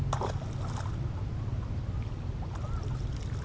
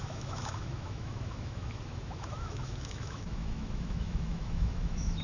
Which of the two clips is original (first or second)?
first